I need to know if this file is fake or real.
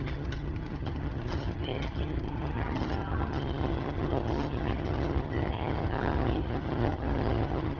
fake